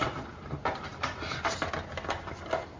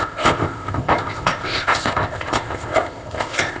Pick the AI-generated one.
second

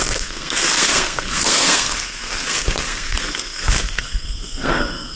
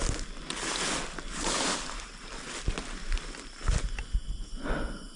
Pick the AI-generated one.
first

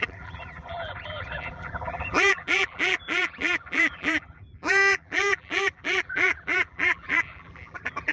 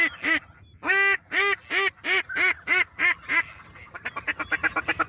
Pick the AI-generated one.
first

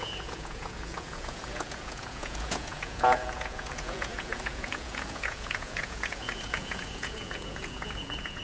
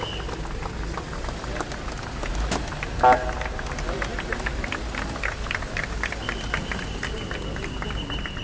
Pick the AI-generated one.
first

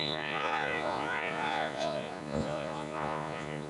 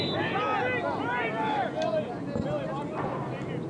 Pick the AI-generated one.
first